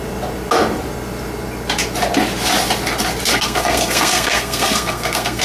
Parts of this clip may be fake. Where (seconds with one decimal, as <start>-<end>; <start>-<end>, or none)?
3.3-5.4